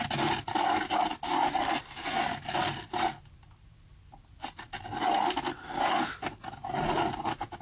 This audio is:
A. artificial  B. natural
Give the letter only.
B